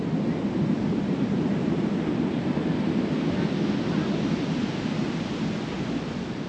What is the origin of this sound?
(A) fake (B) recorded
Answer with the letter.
B